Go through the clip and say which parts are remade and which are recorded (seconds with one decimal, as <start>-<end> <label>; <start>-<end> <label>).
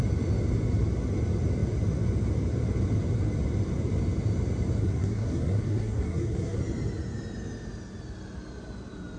0.0-4.8 recorded; 4.8-6.6 remade; 6.6-9.2 recorded